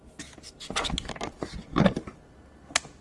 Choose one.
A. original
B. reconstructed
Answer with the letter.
A